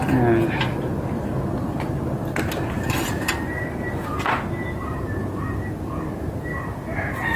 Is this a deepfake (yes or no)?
no